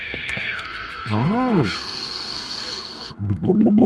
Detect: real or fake fake